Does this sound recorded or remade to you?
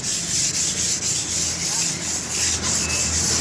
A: recorded